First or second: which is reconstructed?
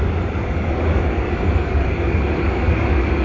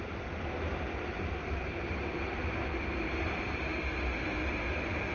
first